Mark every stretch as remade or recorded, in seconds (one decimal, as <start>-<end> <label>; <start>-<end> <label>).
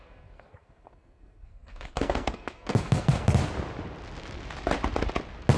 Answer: 0.0-3.4 remade; 3.4-5.6 recorded